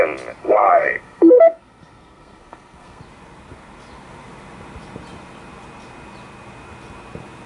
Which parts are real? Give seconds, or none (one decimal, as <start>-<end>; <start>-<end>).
0.0-0.4; 3.0-7.5